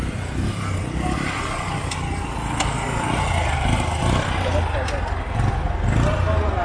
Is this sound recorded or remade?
recorded